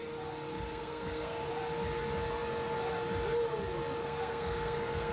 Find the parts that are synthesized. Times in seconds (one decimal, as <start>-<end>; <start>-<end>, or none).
0.5-1.5; 4.0-5.1